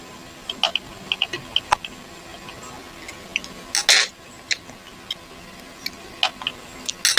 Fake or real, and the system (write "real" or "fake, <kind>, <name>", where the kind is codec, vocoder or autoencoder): real